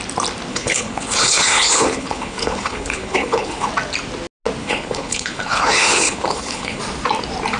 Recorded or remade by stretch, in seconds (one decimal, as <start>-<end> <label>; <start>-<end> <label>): 0.0-0.5 recorded; 0.5-3.7 remade; 3.7-4.6 recorded; 4.6-6.8 remade; 6.8-7.6 recorded